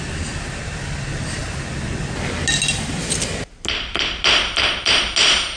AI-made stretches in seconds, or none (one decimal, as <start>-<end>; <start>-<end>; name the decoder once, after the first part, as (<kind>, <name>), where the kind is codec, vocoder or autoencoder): none